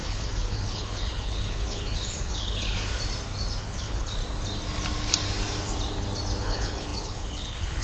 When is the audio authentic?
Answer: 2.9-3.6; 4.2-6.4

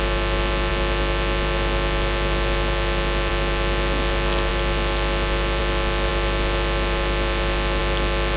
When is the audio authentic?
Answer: 0.0-8.4

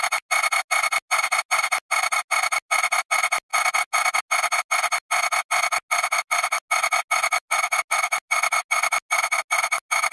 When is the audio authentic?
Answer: 0.0-10.1

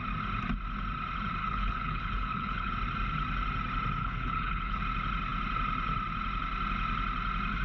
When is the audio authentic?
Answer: 0.0-1.4; 2.7-4.0; 4.8-7.6

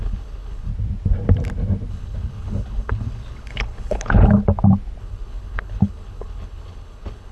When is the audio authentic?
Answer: 0.7-1.9; 4.4-5.0